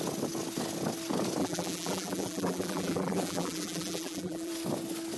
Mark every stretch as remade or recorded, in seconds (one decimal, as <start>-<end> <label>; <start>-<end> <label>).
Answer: 0.0-1.4 recorded; 1.4-4.5 remade; 4.5-5.2 recorded